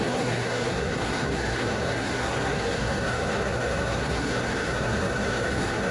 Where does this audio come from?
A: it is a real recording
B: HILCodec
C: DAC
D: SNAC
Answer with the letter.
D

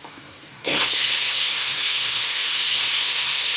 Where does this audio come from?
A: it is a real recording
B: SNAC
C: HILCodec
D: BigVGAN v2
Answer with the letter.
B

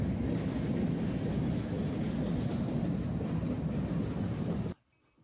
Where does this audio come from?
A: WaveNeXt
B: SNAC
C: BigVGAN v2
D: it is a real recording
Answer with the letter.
D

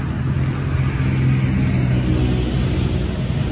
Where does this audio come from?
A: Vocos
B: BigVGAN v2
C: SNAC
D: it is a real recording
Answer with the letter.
D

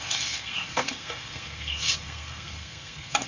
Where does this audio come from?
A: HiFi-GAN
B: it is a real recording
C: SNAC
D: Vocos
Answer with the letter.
C